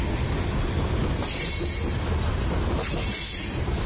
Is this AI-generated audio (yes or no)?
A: no